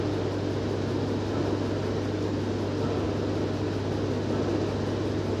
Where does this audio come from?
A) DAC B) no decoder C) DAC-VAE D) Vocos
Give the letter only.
B